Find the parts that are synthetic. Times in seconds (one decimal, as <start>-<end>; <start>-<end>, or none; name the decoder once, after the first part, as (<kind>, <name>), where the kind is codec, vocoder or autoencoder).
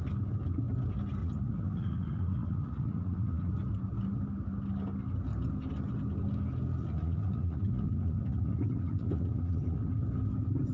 1.2-3.5 (vocoder, Vocos); 6.8-9.9